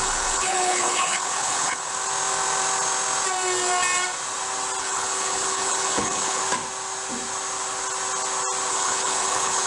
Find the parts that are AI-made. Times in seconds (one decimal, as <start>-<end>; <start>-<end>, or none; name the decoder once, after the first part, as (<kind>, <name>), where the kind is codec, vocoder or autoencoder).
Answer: 0.0-1.9 (codec, HILCodec); 4.8-6.4; 8.7-9.7

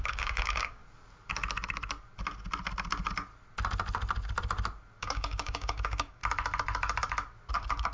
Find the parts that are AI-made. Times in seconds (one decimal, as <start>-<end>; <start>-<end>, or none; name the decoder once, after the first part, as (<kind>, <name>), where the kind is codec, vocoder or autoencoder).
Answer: 0.0-0.8 (codec, DAC); 5.0-6.2; 7.5-7.9

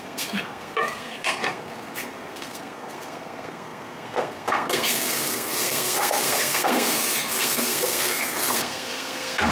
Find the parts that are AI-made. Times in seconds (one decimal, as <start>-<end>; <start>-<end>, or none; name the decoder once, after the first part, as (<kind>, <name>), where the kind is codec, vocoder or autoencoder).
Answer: 0.0-9.5 (codec, SNAC)

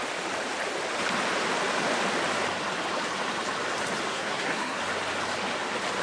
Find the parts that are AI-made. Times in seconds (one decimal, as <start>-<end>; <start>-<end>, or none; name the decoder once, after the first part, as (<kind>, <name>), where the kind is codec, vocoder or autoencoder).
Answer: 4.1-4.8 (codec, SNAC)